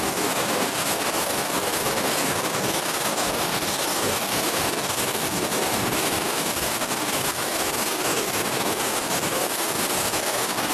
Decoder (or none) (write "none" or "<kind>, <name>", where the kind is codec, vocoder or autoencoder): codec, DAC